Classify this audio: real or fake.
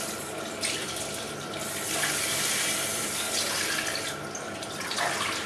real